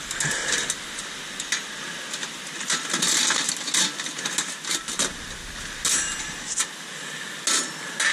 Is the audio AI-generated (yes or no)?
no